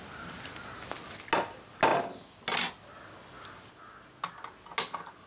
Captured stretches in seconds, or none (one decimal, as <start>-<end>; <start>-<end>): 0.0-5.3

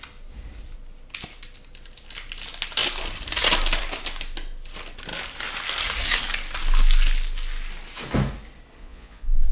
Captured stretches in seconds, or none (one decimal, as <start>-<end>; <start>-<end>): 0.0-8.8